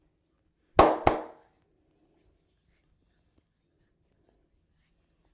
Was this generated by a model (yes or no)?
no